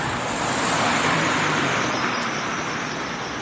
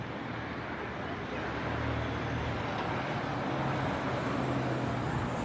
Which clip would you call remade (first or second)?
first